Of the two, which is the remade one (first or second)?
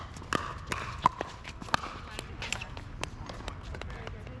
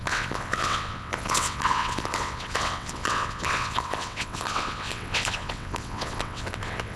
second